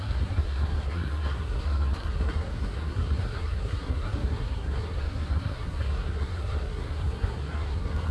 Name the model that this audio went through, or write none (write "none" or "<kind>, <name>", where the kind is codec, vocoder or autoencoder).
codec, SNAC